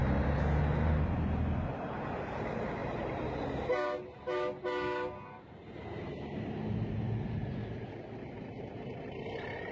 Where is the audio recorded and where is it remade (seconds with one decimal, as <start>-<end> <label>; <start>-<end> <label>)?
0.0-2.8 recorded; 2.8-3.3 remade; 3.3-9.7 recorded